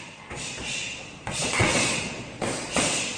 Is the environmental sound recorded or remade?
remade